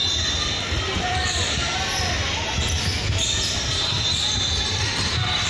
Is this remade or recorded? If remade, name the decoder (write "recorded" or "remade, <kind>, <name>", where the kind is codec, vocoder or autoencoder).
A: recorded